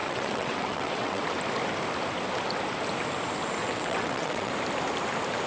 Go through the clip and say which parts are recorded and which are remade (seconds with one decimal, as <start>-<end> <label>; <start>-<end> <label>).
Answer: 0.0-1.2 remade; 1.2-3.6 recorded; 3.6-4.5 remade; 4.5-5.5 recorded